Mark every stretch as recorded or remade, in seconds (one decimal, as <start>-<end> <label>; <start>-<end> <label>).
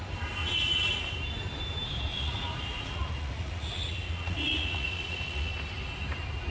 0.0-0.4 recorded; 0.4-1.0 remade; 1.0-2.1 recorded; 2.1-5.5 remade; 5.5-6.5 recorded